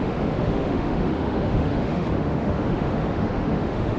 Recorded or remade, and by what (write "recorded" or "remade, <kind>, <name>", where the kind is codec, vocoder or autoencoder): remade, autoencoder, DAC-VAE